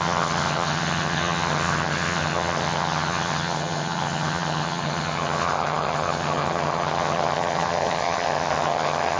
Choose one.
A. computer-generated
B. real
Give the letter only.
A